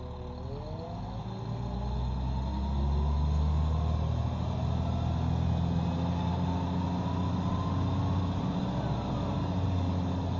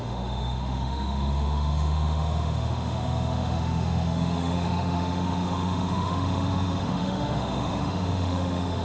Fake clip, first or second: second